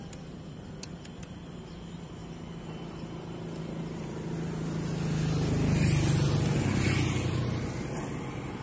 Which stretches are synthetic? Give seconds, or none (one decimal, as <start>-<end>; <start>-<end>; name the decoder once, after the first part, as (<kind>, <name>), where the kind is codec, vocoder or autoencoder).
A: none